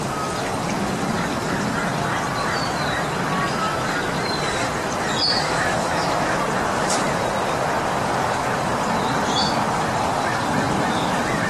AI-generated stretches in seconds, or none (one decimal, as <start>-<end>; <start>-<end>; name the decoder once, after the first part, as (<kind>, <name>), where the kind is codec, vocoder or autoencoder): 5.7-6.4 (autoencoder, DAC-VAE)